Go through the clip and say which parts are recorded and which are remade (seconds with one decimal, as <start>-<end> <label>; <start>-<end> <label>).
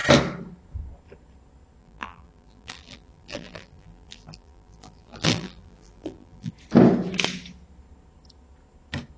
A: 0.0-1.8 recorded; 1.8-6.5 remade; 6.5-9.2 recorded